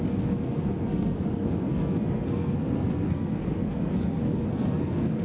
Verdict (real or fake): fake